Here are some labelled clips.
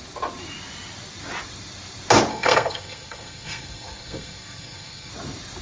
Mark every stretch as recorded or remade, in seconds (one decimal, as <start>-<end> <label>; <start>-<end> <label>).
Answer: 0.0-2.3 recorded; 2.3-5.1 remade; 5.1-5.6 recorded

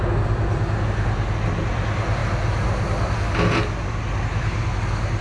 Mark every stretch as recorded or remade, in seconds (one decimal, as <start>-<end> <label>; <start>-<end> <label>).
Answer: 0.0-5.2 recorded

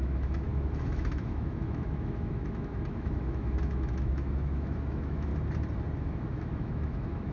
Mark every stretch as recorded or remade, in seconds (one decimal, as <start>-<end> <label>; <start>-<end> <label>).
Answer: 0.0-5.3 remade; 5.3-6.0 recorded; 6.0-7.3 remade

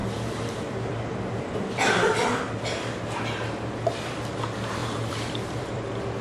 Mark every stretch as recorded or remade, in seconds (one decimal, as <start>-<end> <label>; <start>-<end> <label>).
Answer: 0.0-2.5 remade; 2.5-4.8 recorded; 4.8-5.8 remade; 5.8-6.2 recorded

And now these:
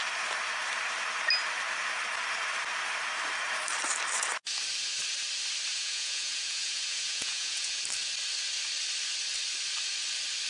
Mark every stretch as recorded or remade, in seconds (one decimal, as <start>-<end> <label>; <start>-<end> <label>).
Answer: 0.0-5.7 recorded; 5.7-7.8 remade; 7.8-10.5 recorded